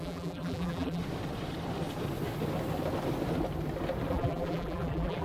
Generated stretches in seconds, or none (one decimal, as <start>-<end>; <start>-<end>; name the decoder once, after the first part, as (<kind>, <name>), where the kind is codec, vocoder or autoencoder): 0.0-1.0 (vocoder, BigVGAN v2); 4.1-5.2